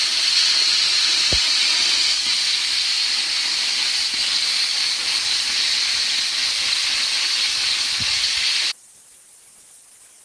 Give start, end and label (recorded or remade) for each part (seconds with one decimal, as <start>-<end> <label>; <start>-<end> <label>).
0.0-4.2 recorded; 4.2-5.3 remade; 5.3-10.2 recorded